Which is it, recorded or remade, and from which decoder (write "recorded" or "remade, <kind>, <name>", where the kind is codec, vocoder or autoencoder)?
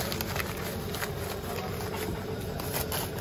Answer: recorded